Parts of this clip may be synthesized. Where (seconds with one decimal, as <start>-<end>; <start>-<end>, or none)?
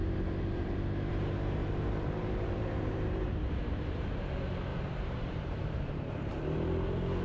0.0-1.1; 1.6-4.2; 4.7-6.1